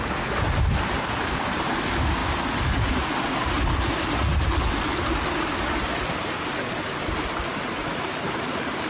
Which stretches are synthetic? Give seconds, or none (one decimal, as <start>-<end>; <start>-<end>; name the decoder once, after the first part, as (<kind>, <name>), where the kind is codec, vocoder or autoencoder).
none